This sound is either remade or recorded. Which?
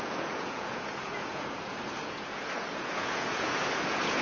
remade